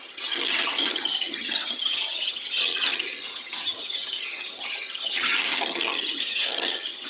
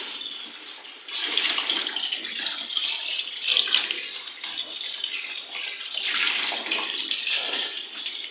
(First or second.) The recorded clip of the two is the second